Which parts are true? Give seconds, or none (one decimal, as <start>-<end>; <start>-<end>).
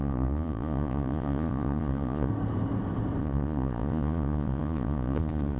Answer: 2.3-3.2